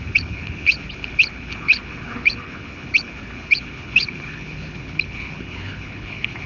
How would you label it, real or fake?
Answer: fake